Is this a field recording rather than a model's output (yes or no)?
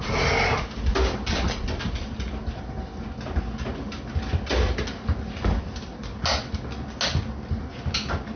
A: yes